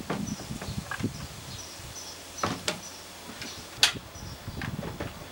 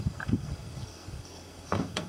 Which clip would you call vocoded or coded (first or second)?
second